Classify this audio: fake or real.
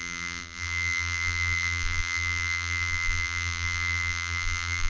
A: fake